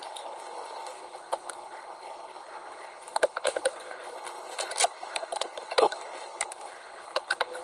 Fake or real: fake